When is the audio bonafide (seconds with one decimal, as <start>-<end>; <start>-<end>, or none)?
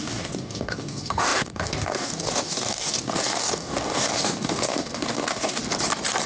5.6-6.3